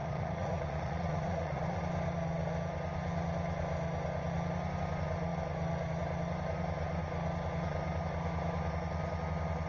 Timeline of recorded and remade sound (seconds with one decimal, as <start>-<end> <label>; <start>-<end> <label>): 0.0-1.8 remade; 1.8-9.7 recorded